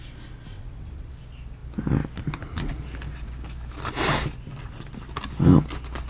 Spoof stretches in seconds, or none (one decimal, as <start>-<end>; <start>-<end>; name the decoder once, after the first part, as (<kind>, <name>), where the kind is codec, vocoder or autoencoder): 0.5-1.1 (vocoder, WaveNeXt)

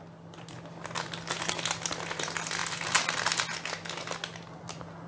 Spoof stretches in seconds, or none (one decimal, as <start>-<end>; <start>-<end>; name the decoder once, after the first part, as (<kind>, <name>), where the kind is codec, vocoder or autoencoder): none

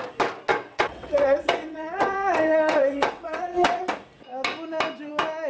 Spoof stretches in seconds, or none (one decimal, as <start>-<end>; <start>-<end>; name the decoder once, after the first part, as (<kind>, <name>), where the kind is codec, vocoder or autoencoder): 0.5-3.8 (vocoder, WaveNeXt)